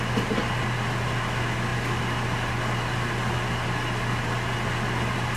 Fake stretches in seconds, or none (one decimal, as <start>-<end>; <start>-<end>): none